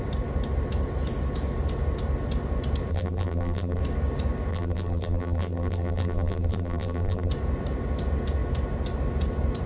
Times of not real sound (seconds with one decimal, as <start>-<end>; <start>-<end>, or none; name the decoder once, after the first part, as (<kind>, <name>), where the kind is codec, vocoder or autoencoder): 2.9-3.8 (vocoder, BigVGAN v2); 4.5-7.3